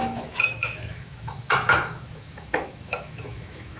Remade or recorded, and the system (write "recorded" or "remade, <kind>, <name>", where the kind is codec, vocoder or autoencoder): remade, autoencoder, DAC-VAE